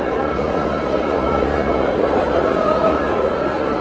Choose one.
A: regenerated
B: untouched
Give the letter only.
A